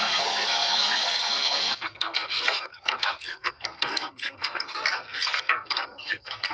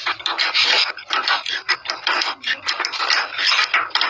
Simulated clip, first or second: first